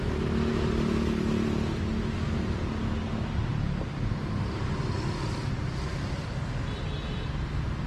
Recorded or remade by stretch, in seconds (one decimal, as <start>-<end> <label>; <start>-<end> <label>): 0.0-7.9 recorded